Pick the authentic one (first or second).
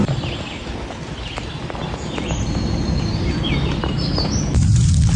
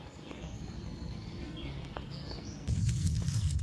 first